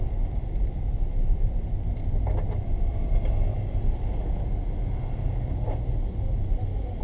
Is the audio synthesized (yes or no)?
no